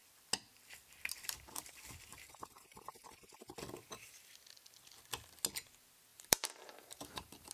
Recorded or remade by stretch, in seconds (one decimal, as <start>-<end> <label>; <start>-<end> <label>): 0.0-2.1 recorded; 2.1-3.1 remade; 3.1-6.1 recorded; 6.1-7.5 remade